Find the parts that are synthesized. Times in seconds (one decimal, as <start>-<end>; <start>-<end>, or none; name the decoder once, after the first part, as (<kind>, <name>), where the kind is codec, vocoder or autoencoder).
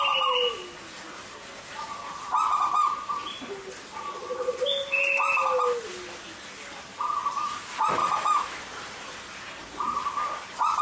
8.0-8.6 (autoencoder, DAC-VAE)